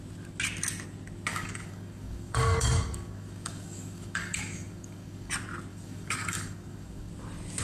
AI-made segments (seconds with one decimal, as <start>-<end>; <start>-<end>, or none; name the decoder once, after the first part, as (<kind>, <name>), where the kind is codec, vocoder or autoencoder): 1.3-5.3 (codec, DAC); 5.7-7.1